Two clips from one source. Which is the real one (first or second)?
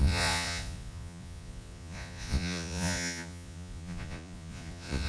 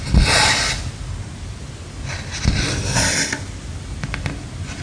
second